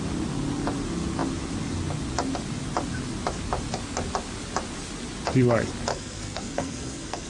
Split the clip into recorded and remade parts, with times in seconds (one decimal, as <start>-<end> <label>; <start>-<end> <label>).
0.0-5.9 recorded; 5.9-7.3 remade